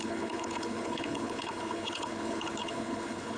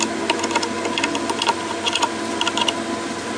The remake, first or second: first